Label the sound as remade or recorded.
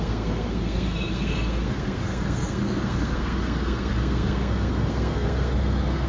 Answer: remade